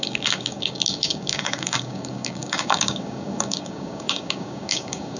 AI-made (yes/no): yes